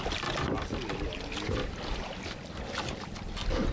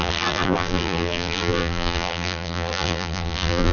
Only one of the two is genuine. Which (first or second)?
first